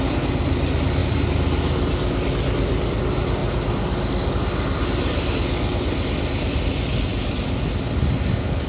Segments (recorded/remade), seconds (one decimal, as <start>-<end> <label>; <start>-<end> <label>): 0.0-8.7 recorded